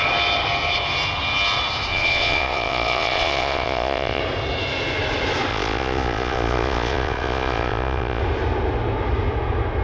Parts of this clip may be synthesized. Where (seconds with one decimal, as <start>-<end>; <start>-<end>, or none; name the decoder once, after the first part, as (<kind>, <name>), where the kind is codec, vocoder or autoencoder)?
1.9-4.2 (vocoder, Vocos); 5.5-8.2